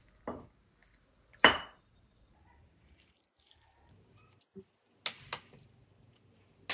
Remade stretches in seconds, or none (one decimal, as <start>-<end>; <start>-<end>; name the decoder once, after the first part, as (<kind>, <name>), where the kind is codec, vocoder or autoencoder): 0.8-3.3 (vocoder, BigVGAN v2)